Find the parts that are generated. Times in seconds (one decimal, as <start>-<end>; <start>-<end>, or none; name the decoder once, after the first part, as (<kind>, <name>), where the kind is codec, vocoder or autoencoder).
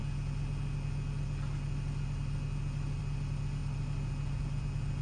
none